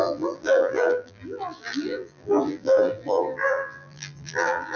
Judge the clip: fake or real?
fake